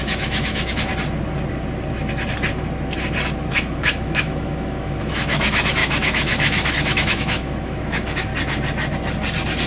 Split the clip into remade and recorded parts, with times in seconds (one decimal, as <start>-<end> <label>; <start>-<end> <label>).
0.0-0.9 remade; 0.9-3.5 recorded; 3.5-8.3 remade; 8.3-9.7 recorded